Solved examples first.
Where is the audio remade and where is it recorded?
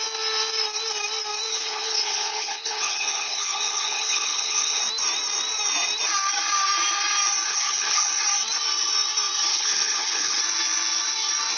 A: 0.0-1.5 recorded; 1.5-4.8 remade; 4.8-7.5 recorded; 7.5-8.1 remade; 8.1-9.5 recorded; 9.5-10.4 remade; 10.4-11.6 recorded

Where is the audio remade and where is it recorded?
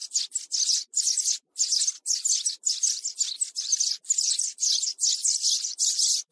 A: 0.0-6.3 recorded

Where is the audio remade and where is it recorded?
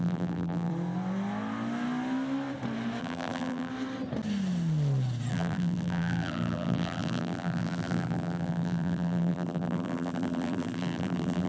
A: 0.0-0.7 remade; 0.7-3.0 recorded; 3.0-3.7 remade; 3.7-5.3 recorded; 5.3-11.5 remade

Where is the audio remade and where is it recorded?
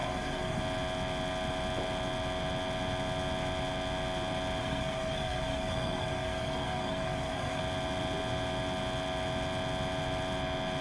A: 0.0-0.6 remade; 0.6-4.6 recorded; 4.6-7.6 remade; 7.6-10.8 recorded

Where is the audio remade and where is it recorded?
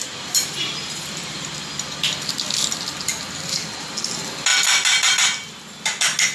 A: 0.0-1.7 remade; 1.7-6.3 recorded